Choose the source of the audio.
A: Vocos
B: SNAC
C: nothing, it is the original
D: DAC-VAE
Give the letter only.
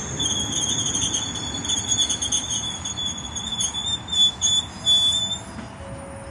C